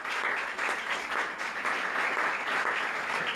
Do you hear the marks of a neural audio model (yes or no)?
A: no